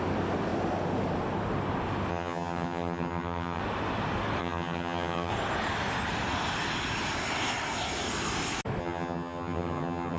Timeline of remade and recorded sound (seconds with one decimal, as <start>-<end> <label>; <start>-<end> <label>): 0.0-2.1 recorded; 2.1-3.6 remade; 3.6-4.4 recorded; 4.4-5.3 remade; 5.3-8.8 recorded; 8.8-10.2 remade